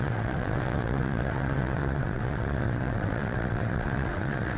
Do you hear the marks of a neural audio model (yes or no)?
yes